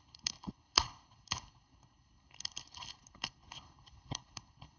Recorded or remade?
remade